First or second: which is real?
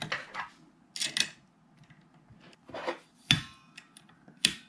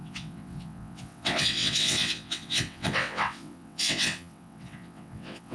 first